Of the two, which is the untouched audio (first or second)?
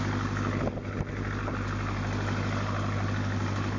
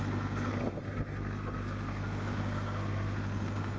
first